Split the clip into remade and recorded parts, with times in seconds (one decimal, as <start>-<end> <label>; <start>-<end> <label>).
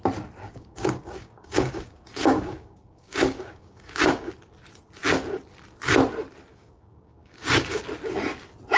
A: 0.0-0.4 recorded; 0.4-4.3 remade; 4.3-6.5 recorded; 6.5-7.8 remade; 7.8-8.8 recorded